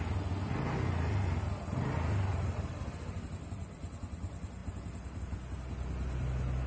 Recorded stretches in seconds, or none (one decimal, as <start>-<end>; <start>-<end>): 0.0-2.3; 2.8-6.7